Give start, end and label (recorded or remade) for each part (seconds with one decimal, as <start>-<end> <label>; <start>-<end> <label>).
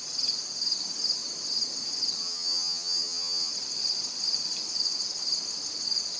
0.0-2.2 recorded; 2.2-3.5 remade; 3.5-6.2 recorded